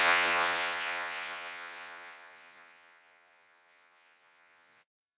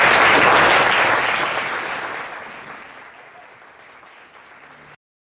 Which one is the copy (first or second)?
first